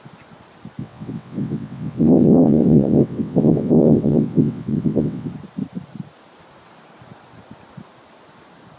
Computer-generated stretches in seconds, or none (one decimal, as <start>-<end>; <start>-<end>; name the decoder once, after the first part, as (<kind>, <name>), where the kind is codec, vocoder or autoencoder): 0.8-5.3 (vocoder, WaveNeXt)